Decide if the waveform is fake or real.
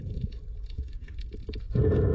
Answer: real